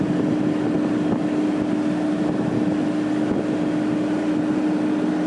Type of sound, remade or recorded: recorded